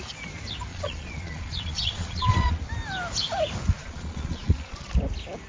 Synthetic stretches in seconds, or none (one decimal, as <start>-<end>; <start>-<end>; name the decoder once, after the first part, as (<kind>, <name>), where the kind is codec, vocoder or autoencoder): 0.7-2.6 (vocoder, Vocos); 3.8-4.9